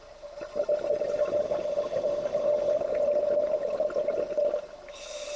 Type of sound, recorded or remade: recorded